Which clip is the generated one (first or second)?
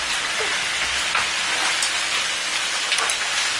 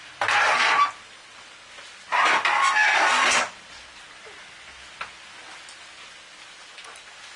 first